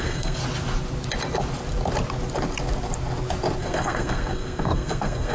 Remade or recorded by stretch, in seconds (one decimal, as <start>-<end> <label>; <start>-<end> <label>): 0.0-0.4 remade; 0.4-3.6 recorded; 3.6-5.3 remade